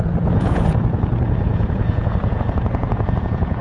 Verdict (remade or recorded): remade